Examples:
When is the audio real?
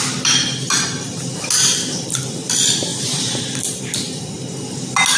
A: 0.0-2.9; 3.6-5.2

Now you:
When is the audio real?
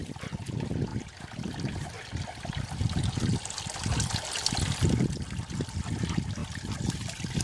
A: 0.0-7.4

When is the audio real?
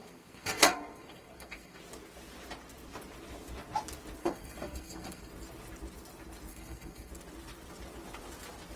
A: 1.8-4.2; 5.3-6.5; 7.1-8.8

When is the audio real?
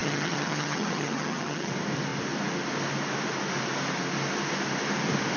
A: 1.7-5.4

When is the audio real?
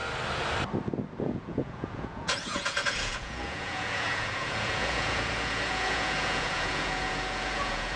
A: 0.0-1.2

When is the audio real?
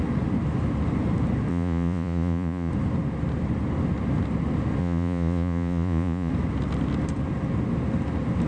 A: 0.0-1.5; 2.7-4.8; 6.3-8.5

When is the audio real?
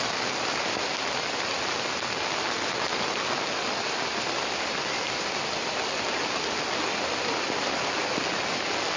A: 0.0-9.0